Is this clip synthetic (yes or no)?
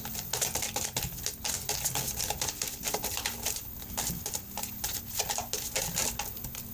no